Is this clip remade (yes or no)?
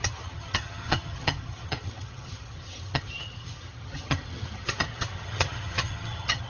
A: yes